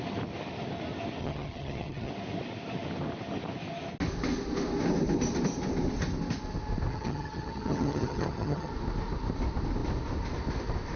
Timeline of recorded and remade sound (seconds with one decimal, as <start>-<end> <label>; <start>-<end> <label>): 0.0-1.2 recorded; 1.2-2.1 remade; 2.1-6.9 recorded; 6.9-8.7 remade; 8.7-11.0 recorded